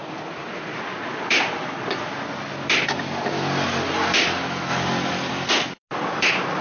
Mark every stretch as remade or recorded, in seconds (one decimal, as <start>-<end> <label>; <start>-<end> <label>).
0.0-6.6 recorded